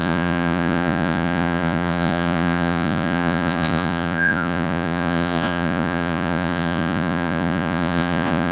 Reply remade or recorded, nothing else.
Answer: remade